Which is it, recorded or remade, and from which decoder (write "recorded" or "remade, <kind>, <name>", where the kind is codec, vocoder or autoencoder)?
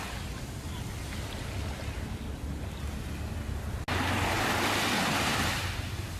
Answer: recorded